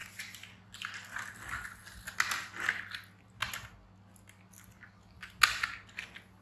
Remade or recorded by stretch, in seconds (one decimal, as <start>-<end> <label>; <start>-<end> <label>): 0.0-6.4 recorded